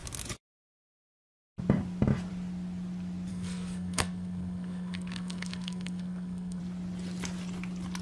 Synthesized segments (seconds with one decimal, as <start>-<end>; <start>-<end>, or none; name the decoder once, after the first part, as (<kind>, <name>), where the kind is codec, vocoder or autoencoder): 3.3-6.6 (codec, SNAC)